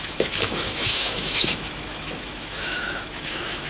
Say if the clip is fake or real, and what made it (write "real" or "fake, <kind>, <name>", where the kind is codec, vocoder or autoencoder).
fake, autoencoder, DAC-VAE